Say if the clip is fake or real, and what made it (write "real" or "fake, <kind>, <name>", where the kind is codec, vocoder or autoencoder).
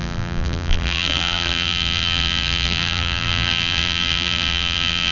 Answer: fake, vocoder, BigVGAN v2